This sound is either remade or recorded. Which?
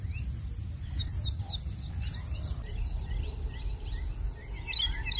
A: recorded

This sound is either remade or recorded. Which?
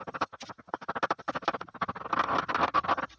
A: recorded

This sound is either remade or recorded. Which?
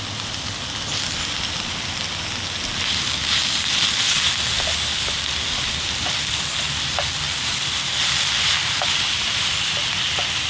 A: recorded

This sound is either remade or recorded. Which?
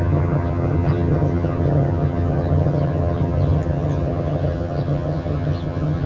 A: remade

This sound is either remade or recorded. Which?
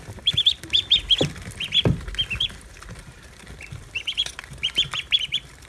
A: recorded